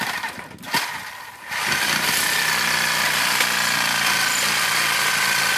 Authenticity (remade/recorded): recorded